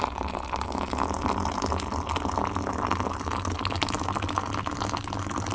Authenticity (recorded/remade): recorded